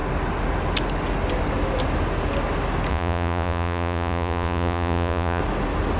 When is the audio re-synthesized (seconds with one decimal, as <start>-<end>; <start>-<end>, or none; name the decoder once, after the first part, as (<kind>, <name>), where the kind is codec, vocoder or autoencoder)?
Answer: 2.9-5.4 (vocoder, Vocos)